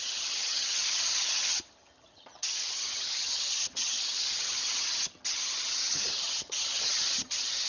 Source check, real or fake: fake